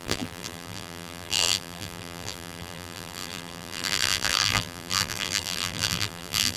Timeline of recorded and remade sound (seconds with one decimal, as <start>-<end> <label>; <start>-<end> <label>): 0.0-6.6 remade